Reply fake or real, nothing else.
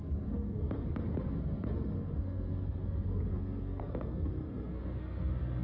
fake